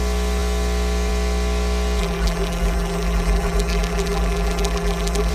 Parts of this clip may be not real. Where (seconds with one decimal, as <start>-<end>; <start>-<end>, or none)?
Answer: 2.0-5.3